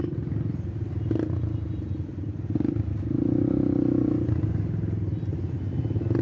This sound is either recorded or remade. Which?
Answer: recorded